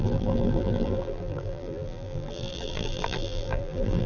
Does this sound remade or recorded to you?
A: remade